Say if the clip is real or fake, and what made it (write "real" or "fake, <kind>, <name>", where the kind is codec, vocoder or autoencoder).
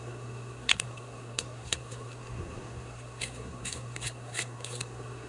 fake, codec, SNAC